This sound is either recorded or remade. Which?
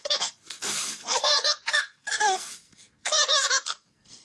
remade